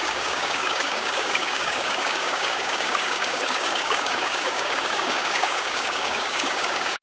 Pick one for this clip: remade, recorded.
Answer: remade